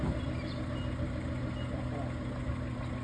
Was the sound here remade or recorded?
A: recorded